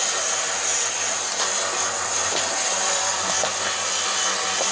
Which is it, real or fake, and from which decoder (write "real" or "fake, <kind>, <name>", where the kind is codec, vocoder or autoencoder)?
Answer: fake, vocoder, BigVGAN v2